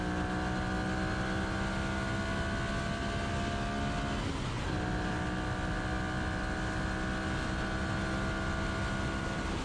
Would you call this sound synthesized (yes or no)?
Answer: no